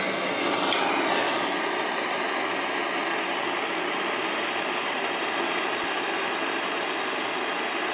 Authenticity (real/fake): real